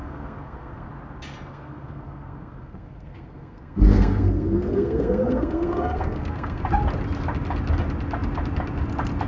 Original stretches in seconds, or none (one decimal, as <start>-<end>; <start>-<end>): 0.9-1.5; 6.6-9.3